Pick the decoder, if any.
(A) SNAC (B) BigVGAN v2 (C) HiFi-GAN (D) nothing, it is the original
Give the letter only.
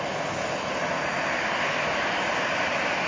D